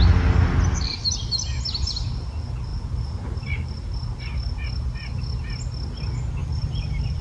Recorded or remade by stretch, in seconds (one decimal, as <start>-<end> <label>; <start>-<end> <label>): 0.0-0.9 recorded; 0.9-2.1 remade; 2.1-2.7 recorded; 2.7-4.2 remade; 4.2-7.2 recorded